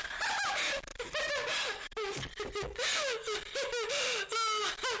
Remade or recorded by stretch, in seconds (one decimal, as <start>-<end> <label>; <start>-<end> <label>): 0.0-5.0 recorded